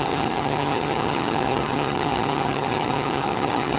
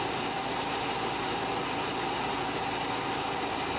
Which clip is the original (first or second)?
second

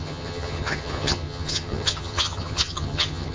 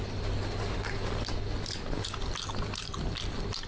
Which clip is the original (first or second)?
second